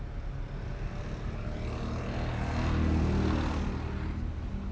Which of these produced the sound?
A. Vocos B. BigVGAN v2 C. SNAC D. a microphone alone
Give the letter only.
D